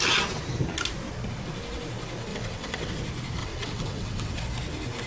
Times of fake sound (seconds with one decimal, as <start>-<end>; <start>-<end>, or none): 2.3-2.9; 3.4-4.4